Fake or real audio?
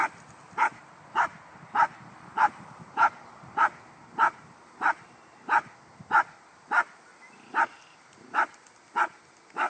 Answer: real